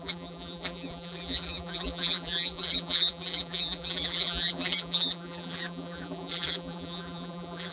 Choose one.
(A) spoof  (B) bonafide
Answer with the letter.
A